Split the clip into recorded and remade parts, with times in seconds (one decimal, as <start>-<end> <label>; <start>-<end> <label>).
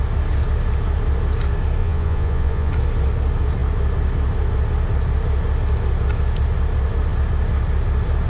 0.0-1.8 recorded; 1.8-2.7 remade; 2.7-8.3 recorded